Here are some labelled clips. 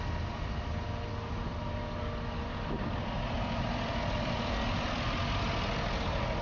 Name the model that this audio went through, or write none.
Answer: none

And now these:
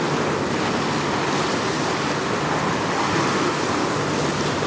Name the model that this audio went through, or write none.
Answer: none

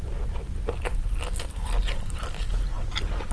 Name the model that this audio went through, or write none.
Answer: none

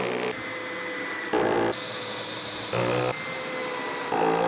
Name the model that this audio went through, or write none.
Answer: none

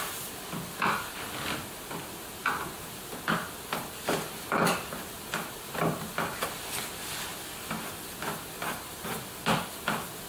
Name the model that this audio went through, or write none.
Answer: none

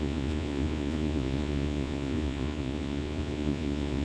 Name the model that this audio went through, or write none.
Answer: vocoder, Vocos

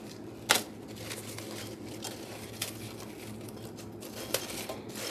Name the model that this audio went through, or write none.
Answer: none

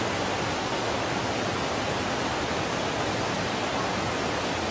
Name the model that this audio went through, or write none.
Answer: none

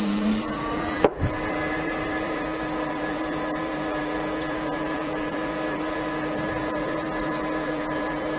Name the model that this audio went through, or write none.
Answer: vocoder, BigVGAN v2